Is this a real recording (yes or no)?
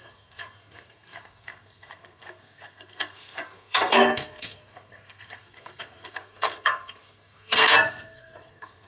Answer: no